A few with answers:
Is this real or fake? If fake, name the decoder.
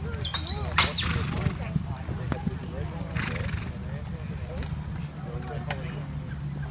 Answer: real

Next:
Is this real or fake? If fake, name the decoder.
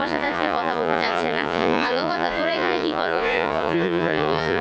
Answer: fake, vocoder, Vocos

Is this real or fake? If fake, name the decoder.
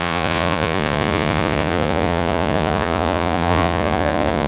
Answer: fake, vocoder, Vocos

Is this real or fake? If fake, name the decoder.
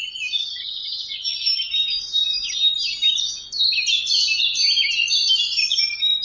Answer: real